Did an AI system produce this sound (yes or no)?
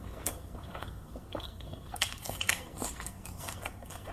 yes